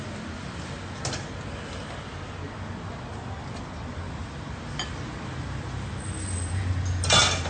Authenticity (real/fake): real